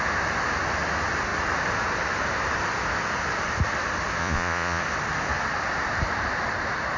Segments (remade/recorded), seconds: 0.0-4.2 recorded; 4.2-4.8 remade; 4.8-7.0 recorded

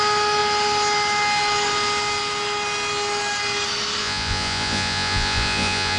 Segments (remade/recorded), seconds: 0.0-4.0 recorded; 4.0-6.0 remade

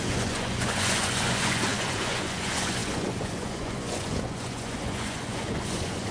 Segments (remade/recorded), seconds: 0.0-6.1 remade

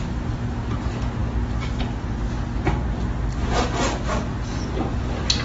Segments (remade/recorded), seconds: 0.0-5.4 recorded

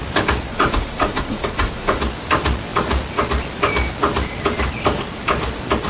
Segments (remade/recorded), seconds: 0.0-0.5 recorded; 0.5-2.0 remade; 2.0-5.9 recorded

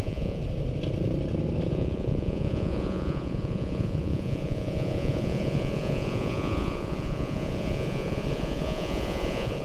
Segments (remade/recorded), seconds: 0.0-0.4 remade; 0.4-1.7 recorded; 1.7-9.6 remade